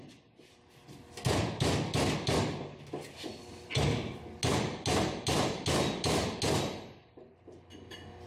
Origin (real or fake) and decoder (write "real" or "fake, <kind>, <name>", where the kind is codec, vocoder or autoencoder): real